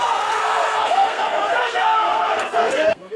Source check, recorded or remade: remade